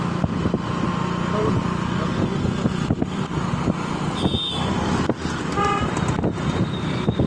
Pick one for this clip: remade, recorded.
recorded